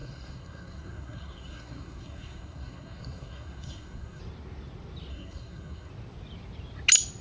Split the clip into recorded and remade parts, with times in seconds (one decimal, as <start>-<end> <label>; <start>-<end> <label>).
0.0-4.2 remade; 4.2-5.1 recorded; 5.1-5.9 remade; 5.9-7.2 recorded